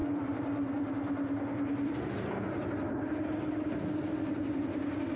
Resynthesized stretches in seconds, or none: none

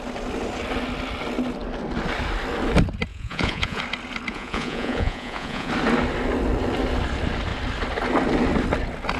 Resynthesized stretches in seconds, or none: 3.1-3.8 (vocoder, Vocos); 4.3-5.7

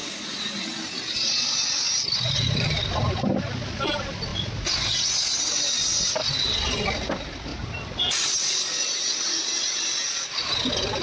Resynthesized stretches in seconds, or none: 0.0-0.5 (vocoder, Vocos)

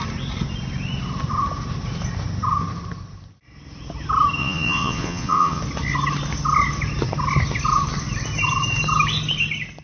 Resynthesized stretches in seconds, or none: 4.4-5.6 (vocoder, Vocos)

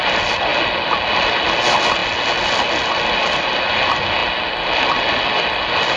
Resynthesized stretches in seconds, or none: none